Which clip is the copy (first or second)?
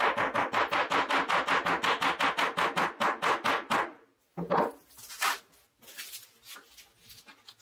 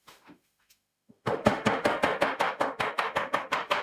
second